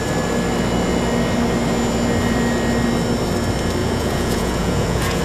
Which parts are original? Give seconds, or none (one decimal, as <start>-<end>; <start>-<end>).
0.0-3.8